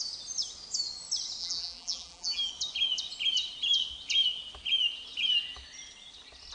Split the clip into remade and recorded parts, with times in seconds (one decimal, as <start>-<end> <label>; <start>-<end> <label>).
0.0-1.4 recorded; 1.4-2.5 remade; 2.5-6.5 recorded